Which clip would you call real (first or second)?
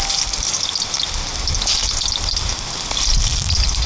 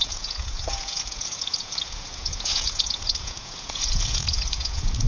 first